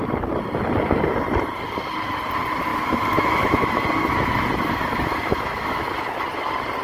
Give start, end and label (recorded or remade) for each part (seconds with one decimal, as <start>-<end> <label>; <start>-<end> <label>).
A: 0.0-2.7 recorded; 2.7-6.2 remade; 6.2-6.8 recorded